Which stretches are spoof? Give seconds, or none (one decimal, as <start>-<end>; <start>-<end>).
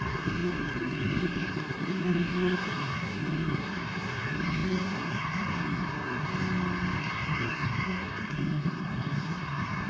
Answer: 0.0-6.3; 7.0-9.9